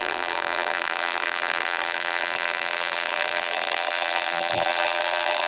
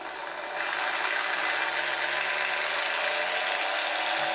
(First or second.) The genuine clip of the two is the second